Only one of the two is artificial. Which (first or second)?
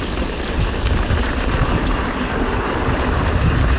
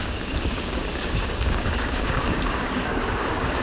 second